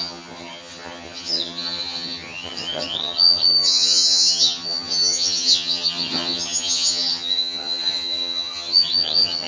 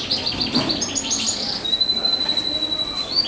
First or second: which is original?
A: second